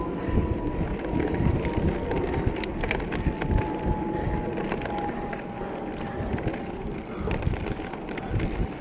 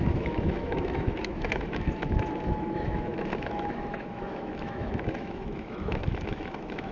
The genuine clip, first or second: first